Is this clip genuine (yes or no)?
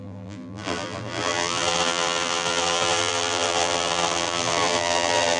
no